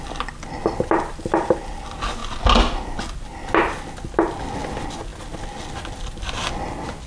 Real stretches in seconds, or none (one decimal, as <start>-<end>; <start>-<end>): 0.0-7.1